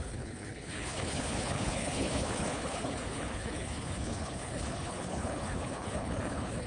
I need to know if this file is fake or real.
fake